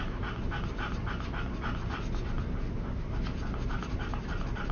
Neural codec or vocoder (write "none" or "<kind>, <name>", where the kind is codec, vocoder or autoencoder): vocoder, BigVGAN v2